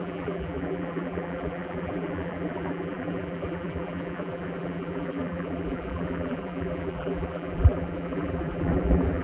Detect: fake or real fake